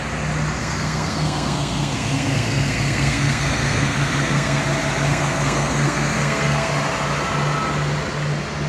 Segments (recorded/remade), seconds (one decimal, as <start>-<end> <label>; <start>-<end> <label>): 0.0-0.6 recorded; 0.6-4.6 remade; 4.6-5.1 recorded; 5.1-6.7 remade; 6.7-8.7 recorded